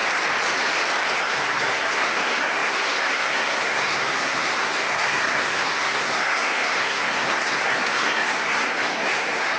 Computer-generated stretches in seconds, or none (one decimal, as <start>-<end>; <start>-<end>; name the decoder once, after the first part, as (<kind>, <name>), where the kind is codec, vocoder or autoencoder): 1.2-9.6 (codec, SNAC)